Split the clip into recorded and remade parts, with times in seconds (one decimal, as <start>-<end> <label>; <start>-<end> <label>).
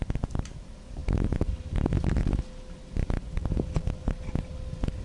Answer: 0.0-5.0 recorded